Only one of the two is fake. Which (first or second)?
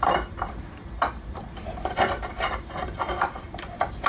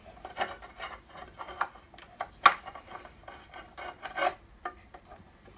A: first